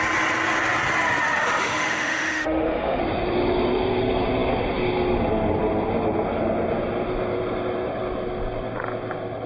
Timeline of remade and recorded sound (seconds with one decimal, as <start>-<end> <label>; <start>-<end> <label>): 0.0-1.4 recorded; 1.4-3.0 remade; 3.0-9.5 recorded

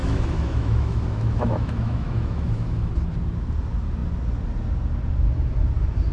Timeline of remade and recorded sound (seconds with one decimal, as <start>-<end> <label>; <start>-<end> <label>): 0.0-2.9 remade; 2.9-6.1 recorded